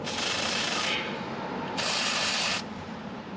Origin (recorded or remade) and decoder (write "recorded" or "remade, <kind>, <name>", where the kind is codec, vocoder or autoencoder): remade, vocoder, BigVGAN v2